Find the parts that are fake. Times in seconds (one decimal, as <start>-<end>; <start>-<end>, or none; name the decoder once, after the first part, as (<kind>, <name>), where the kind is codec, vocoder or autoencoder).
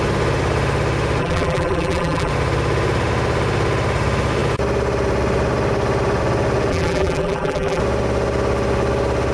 1.2-2.3 (vocoder, BigVGAN v2); 6.7-7.8